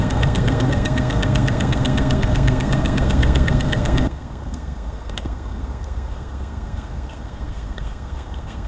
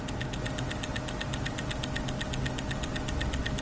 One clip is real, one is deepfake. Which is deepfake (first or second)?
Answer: first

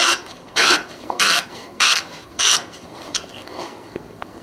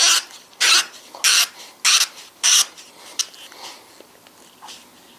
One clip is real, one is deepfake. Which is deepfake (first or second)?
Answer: first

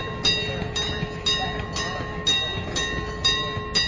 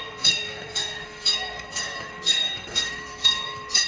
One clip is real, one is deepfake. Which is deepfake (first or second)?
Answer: second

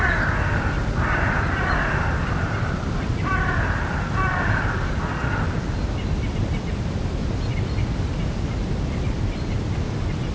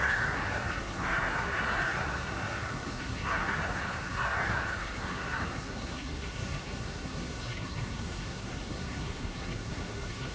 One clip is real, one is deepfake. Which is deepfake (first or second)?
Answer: second